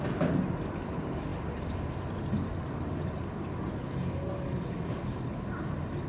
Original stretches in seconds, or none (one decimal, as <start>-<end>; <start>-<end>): 0.0-6.1